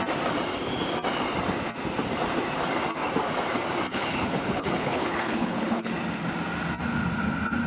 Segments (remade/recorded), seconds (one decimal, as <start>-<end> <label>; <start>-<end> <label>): 0.0-3.9 recorded; 3.9-5.9 remade; 5.9-7.7 recorded